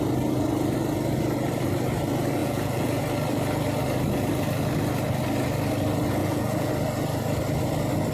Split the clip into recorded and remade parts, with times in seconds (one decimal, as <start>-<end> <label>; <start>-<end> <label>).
0.0-2.4 recorded; 2.4-3.0 remade; 3.0-6.2 recorded; 6.2-6.7 remade; 6.7-8.1 recorded